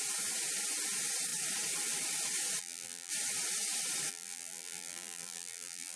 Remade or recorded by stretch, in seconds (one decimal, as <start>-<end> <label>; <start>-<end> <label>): 0.0-2.6 recorded; 2.6-3.1 remade; 3.1-4.1 recorded; 4.1-6.0 remade